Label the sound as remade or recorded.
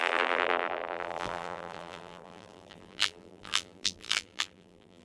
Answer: remade